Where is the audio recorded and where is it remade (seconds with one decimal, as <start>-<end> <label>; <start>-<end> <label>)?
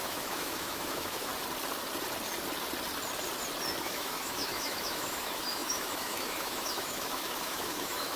0.0-1.3 remade; 1.3-3.8 recorded; 3.8-8.2 remade